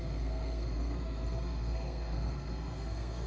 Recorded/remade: remade